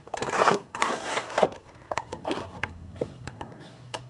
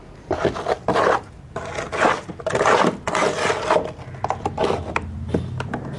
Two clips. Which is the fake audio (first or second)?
first